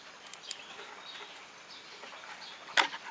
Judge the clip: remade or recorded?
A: recorded